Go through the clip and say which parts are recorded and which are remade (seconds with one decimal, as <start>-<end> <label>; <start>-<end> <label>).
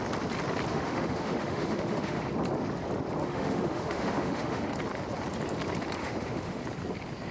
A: 0.0-0.7 recorded; 0.7-2.2 remade; 2.2-3.2 recorded; 3.2-4.7 remade; 4.7-6.0 recorded; 6.0-6.6 remade; 6.6-7.3 recorded